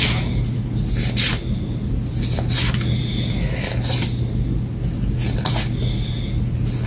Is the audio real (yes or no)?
yes